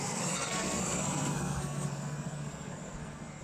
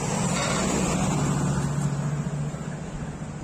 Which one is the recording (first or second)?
second